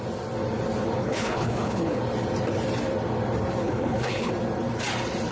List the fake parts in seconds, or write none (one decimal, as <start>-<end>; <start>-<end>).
1.0-2.0; 3.6-4.3